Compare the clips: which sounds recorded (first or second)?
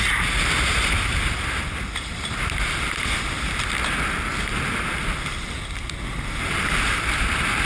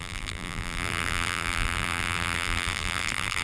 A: first